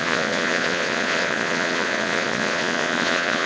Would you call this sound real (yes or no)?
no